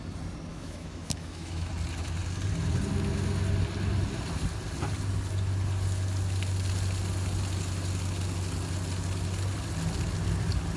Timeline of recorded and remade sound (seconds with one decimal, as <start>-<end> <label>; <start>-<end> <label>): 0.0-0.5 recorded; 0.5-1.7 remade; 1.7-10.8 recorded